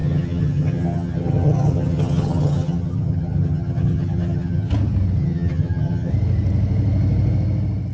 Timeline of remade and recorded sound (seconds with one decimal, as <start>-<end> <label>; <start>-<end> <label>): 0.0-4.7 remade; 4.7-5.2 recorded; 5.2-6.1 remade; 6.1-7.9 recorded